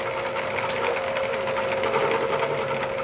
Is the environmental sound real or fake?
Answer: real